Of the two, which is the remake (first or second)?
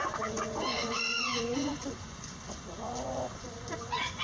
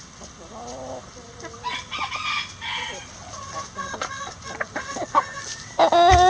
first